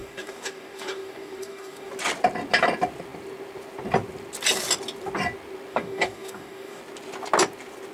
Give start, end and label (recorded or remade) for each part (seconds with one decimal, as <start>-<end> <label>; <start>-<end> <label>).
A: 0.0-1.9 remade; 1.9-5.7 recorded; 5.7-6.8 remade; 6.8-7.9 recorded